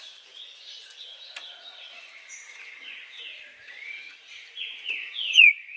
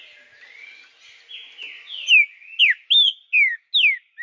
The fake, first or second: first